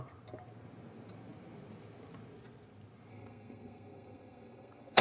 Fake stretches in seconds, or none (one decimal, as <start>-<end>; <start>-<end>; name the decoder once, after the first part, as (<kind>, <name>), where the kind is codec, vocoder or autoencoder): 3.1-5.0 (codec, SNAC)